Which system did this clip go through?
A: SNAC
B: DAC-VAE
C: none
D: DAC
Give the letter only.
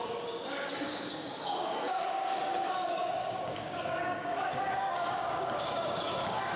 D